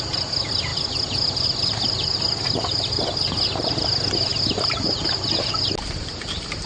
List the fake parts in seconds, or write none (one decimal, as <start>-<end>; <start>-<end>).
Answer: none